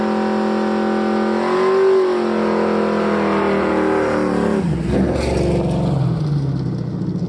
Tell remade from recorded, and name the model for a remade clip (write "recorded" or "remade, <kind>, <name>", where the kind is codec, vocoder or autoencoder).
recorded